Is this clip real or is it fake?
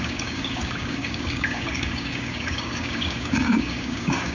fake